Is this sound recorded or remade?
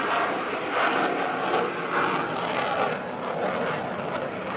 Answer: recorded